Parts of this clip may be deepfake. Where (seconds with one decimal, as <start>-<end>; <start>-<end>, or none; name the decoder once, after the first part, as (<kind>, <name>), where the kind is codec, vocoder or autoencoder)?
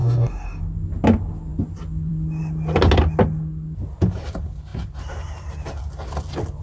0.0-0.6 (codec, DAC)